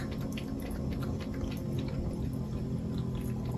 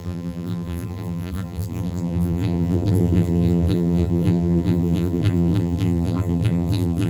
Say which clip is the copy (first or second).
second